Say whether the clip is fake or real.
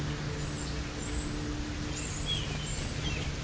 real